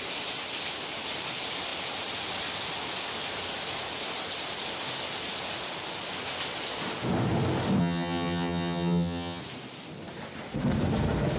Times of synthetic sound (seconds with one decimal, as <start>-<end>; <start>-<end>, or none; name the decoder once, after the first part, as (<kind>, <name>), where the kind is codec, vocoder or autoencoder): 7.8-9.4 (vocoder, HiFi-GAN)